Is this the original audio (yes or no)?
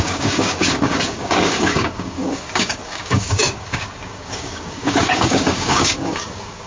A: no